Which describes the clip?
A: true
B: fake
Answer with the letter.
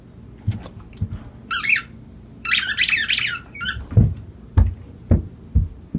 A